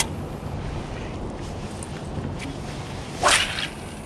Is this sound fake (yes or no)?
no